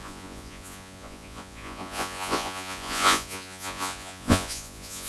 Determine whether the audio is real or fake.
fake